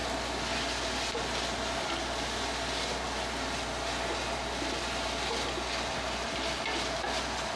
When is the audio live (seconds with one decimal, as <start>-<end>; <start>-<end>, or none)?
0.0-7.6